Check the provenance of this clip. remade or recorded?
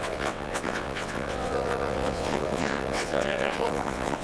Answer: remade